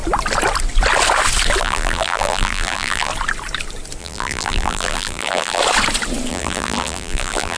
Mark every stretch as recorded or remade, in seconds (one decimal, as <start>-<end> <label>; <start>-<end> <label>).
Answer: 0.0-1.6 recorded; 1.6-3.1 remade; 3.1-4.0 recorded; 4.0-5.6 remade; 5.6-6.3 recorded; 6.3-7.6 remade